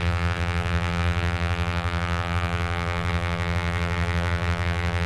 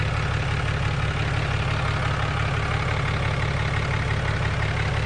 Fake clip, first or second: first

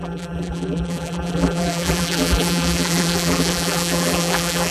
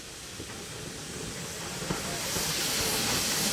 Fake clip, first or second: first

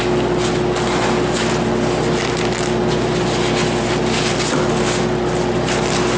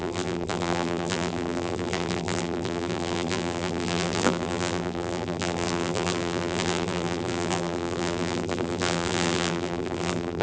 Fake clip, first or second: second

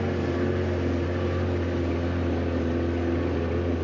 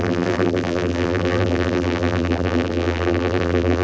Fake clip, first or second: second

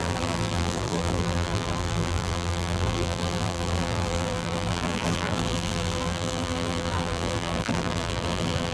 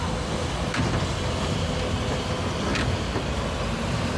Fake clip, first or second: first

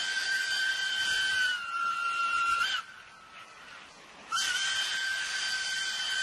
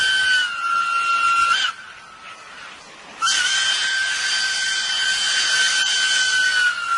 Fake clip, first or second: first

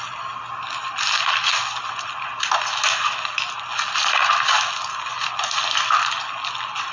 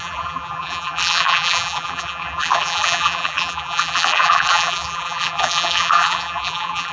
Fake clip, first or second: second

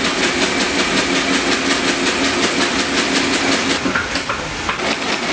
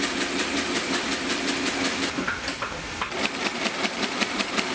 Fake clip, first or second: second